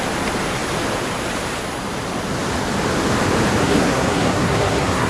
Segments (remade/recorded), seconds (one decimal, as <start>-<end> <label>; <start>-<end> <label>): 0.0-3.6 recorded; 3.6-5.1 remade